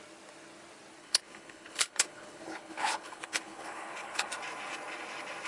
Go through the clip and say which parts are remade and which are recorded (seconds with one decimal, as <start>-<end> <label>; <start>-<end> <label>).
0.0-1.0 recorded; 1.0-4.3 remade; 4.3-5.5 recorded